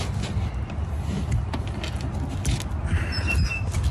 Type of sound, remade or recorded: recorded